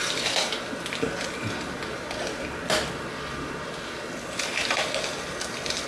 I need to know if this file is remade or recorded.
recorded